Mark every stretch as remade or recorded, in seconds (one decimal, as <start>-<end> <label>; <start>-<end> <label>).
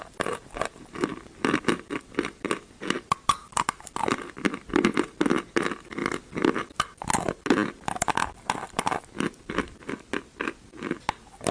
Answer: 0.0-1.1 recorded; 1.1-5.4 remade; 5.4-8.2 recorded; 8.2-9.5 remade; 9.5-11.5 recorded